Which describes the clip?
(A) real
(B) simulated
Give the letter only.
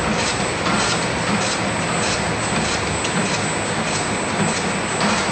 A